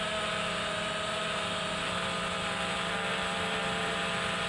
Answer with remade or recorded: recorded